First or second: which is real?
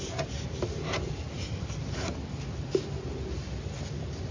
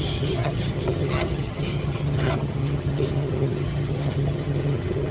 first